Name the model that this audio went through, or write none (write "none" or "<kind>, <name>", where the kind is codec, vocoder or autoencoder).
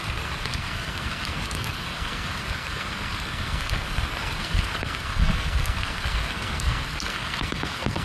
codec, SNAC